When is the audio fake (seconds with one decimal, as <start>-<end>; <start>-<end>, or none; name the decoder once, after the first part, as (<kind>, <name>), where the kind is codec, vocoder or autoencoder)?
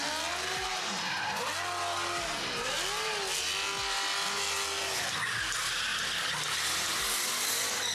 none